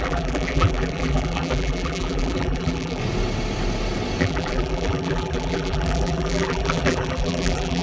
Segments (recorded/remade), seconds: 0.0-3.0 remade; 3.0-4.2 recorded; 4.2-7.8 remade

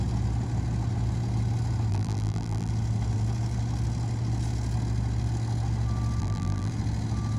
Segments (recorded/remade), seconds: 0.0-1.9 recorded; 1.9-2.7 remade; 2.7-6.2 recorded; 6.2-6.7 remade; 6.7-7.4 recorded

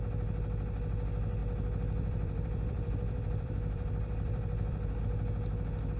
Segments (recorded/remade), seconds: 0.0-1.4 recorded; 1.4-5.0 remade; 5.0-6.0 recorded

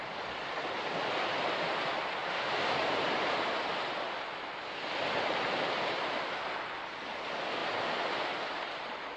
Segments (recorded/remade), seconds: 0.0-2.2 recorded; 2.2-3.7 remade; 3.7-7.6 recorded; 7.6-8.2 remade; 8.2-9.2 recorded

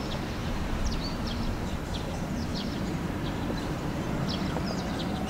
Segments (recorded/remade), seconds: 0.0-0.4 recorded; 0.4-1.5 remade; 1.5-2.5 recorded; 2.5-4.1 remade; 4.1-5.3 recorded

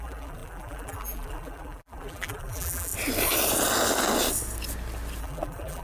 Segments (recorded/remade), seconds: 0.0-2.9 remade; 2.9-5.2 recorded; 5.2-5.8 remade